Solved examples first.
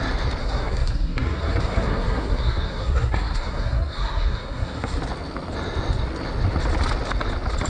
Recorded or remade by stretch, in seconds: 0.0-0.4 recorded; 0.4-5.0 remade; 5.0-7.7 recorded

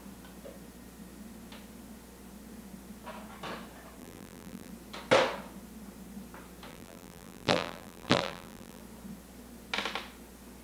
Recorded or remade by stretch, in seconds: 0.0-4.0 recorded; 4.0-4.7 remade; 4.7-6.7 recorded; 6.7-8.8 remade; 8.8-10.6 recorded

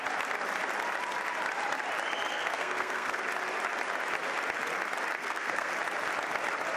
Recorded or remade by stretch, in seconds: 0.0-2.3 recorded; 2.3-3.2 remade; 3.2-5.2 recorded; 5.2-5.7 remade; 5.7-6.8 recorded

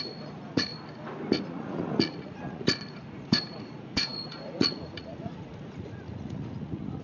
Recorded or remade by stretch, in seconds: 0.0-0.7 remade; 0.7-1.4 recorded; 1.4-7.0 remade

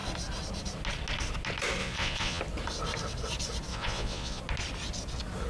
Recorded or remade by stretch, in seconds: 0.0-1.8 recorded; 1.8-2.4 remade; 2.4-3.7 recorded; 3.7-4.4 remade; 4.4-5.5 recorded

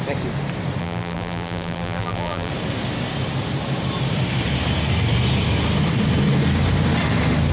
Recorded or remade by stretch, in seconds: 0.0-0.8 recorded; 0.8-2.5 remade; 2.5-7.5 recorded